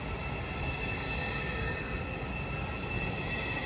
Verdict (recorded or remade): recorded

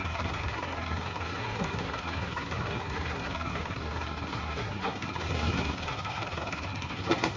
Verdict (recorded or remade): remade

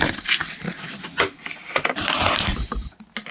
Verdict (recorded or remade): recorded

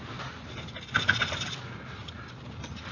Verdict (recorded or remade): recorded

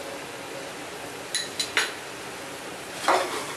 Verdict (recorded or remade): recorded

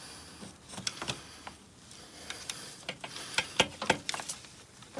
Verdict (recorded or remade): recorded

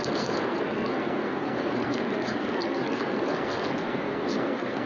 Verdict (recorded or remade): remade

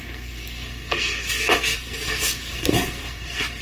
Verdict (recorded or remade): remade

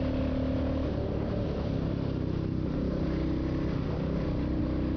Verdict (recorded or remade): recorded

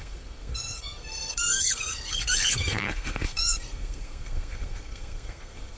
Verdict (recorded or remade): remade